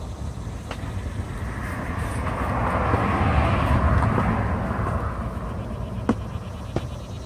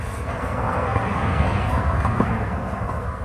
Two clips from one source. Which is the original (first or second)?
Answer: first